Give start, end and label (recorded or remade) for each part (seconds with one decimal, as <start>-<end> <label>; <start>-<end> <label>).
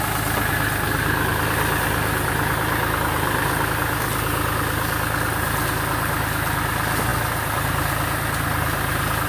0.0-9.3 recorded